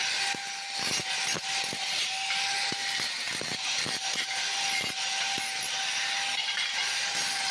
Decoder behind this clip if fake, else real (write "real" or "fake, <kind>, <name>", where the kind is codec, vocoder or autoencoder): real